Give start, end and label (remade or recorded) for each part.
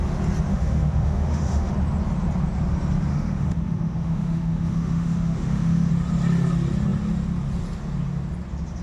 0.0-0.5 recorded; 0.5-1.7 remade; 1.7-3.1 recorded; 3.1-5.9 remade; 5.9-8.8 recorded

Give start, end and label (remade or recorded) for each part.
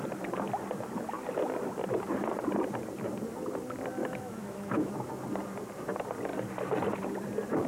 0.0-4.0 recorded; 4.0-4.9 remade; 4.9-7.7 recorded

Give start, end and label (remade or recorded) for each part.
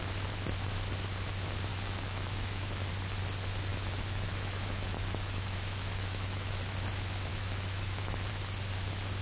0.0-1.7 recorded; 1.7-2.9 remade; 2.9-3.7 recorded; 3.7-6.6 remade; 6.6-7.3 recorded; 7.3-8.3 remade; 8.3-9.2 recorded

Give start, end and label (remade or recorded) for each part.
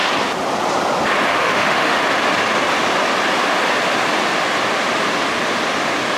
0.0-1.3 recorded; 1.3-2.0 remade; 2.0-6.2 recorded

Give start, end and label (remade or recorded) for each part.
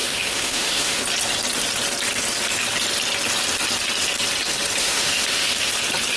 0.0-1.0 remade; 1.0-4.8 recorded; 4.8-5.7 remade; 5.7-6.2 recorded